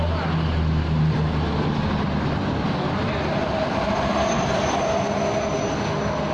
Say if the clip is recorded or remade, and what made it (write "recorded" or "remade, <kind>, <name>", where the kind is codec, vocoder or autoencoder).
recorded